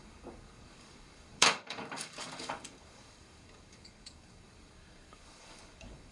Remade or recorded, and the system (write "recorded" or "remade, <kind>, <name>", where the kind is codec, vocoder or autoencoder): remade, codec, DAC